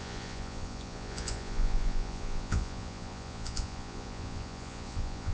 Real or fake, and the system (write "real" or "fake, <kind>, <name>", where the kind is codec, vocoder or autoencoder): fake, vocoder, Vocos